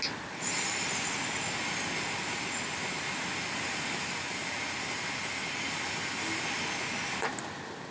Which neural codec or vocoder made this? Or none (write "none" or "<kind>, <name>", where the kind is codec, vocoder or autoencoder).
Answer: none